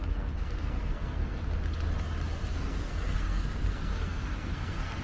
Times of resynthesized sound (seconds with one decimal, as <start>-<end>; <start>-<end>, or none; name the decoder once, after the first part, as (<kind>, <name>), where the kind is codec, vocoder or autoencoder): 0.0-1.4 (codec, SNAC); 2.5-5.0